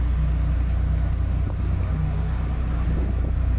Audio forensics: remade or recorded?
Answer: recorded